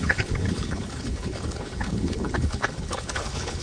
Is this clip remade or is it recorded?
remade